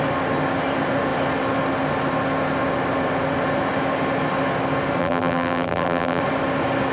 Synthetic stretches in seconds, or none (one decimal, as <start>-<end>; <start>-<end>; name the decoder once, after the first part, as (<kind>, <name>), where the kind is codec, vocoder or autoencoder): 5.0-6.2 (vocoder, BigVGAN v2)